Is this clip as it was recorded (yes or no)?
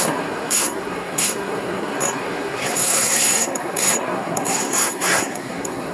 no